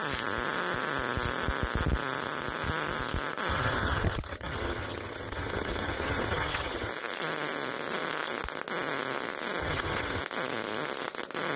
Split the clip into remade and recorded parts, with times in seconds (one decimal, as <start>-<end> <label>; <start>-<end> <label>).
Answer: 0.0-3.5 recorded; 3.5-6.9 remade; 6.9-9.6 recorded; 9.6-10.2 remade; 10.2-11.6 recorded